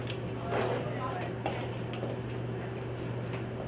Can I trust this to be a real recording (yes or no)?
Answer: yes